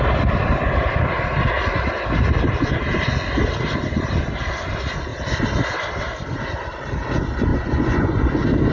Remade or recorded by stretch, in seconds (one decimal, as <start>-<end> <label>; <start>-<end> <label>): 0.0-7.5 recorded; 7.5-8.2 remade; 8.2-8.7 recorded